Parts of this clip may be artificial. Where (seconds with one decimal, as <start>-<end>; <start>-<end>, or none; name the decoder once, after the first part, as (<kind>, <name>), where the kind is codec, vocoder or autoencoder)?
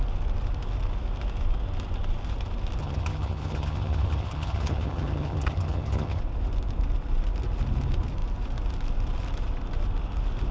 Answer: 2.8-6.2 (vocoder, HiFi-GAN)